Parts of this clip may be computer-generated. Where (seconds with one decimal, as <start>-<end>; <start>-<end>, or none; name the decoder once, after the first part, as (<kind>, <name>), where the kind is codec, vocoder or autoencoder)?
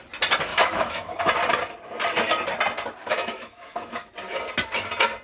0.5-1.3 (autoencoder, DAC-VAE); 3.0-4.1